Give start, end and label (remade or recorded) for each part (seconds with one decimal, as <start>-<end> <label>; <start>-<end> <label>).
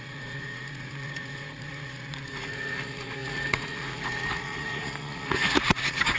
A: 0.0-6.2 remade